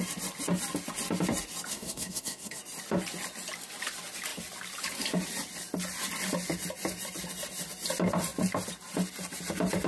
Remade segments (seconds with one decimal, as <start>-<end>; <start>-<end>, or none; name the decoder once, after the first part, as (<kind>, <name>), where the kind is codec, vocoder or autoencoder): 1.7-2.6 (codec, SNAC)